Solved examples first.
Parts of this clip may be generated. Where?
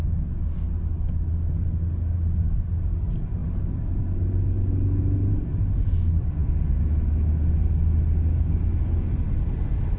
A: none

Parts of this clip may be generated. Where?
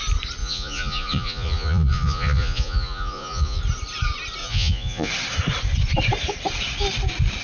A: 0.4-3.6 (vocoder, Vocos); 4.4-5.1